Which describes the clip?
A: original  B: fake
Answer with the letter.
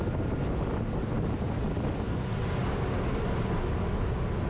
A